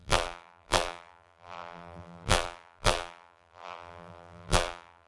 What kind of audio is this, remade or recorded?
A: remade